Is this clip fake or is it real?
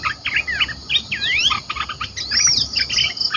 real